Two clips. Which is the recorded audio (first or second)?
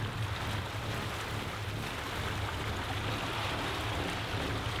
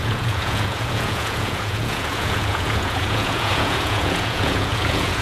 first